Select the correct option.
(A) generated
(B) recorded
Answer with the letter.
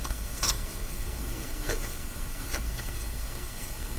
A